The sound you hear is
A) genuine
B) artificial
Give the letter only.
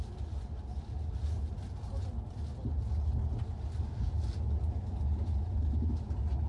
A